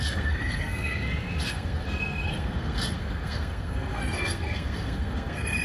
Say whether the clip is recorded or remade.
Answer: remade